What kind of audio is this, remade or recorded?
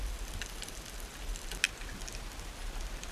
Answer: recorded